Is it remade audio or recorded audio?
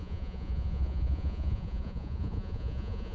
remade